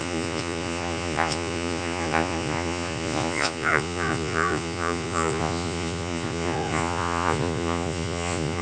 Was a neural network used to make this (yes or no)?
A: yes